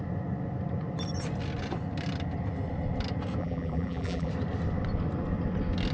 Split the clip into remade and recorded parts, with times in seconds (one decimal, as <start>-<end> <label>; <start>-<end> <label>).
0.0-3.4 recorded; 3.4-4.3 remade; 4.3-5.9 recorded